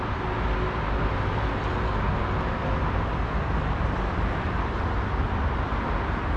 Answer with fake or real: real